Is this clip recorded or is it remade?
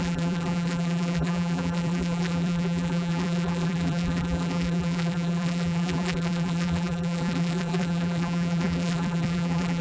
remade